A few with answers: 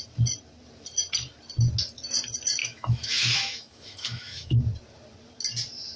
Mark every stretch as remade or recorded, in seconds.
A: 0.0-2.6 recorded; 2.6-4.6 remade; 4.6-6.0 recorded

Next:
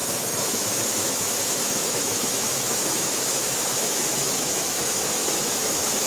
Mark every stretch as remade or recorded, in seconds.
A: 0.0-6.1 remade